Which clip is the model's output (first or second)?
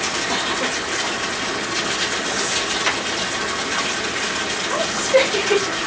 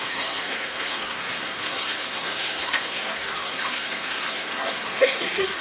second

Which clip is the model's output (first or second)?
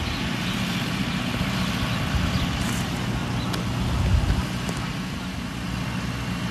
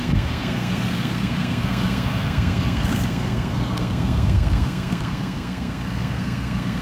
second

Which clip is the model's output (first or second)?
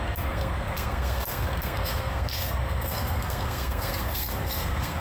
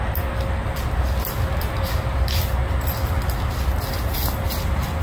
first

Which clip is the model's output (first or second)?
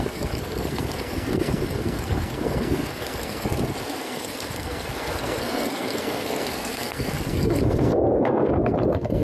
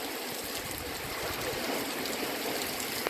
first